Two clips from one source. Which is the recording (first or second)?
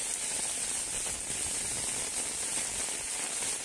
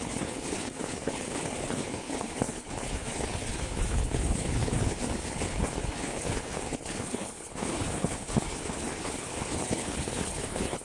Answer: first